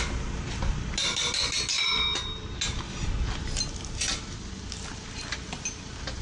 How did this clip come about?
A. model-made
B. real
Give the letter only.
B